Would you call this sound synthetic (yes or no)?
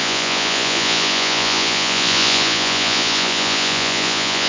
yes